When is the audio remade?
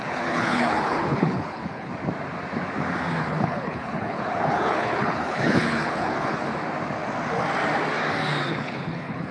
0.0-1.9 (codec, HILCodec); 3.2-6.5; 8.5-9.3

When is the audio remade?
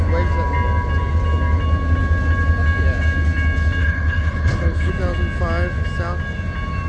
3.8-4.9 (codec, HILCodec)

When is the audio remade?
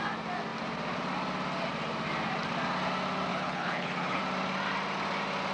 3.3-4.2 (codec, HILCodec)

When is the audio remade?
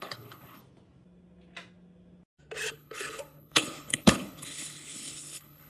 0.0-0.6 (codec, HILCodec); 2.7-5.7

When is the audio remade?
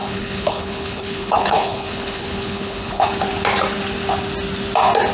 0.0-3.1 (codec, HILCodec)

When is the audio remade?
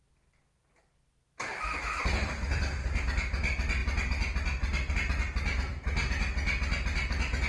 none